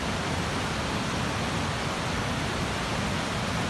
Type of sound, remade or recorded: recorded